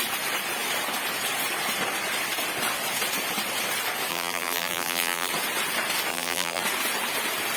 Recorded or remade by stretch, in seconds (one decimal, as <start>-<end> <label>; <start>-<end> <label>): 0.0-4.1 recorded; 4.1-5.3 remade; 5.3-6.1 recorded; 6.1-6.6 remade; 6.6-7.6 recorded